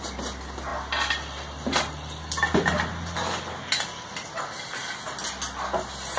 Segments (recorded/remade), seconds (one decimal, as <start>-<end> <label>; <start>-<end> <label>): 0.0-6.2 recorded